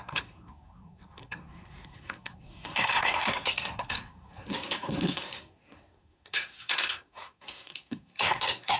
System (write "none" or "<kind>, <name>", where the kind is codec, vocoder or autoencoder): codec, SNAC